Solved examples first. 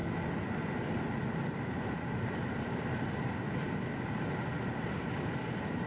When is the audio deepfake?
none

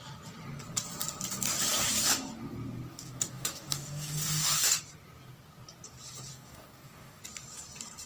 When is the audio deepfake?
2.9-4.8; 6.3-7.2